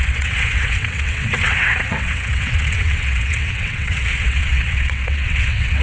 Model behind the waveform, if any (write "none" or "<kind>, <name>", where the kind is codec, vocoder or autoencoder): vocoder, WaveNeXt